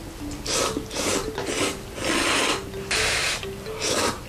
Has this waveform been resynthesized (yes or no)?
no